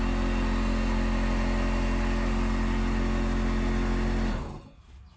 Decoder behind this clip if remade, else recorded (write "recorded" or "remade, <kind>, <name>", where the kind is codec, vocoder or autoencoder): recorded